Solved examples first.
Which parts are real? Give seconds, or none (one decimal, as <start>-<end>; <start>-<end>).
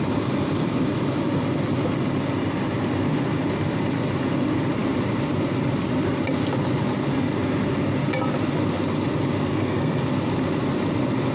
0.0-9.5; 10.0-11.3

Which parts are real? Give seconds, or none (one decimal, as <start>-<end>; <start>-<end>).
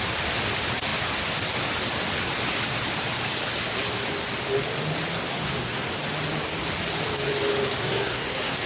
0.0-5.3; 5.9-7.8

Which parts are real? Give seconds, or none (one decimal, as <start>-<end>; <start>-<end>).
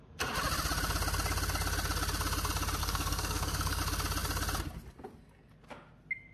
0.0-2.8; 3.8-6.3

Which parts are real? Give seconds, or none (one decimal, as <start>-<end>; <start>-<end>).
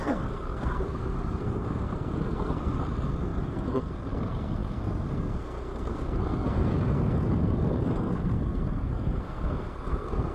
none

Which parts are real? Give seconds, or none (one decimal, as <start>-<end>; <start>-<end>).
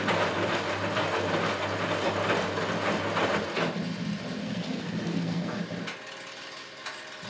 0.0-4.4; 5.6-7.3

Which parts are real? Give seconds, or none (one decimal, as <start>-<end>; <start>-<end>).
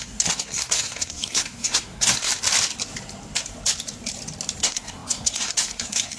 2.3-4.6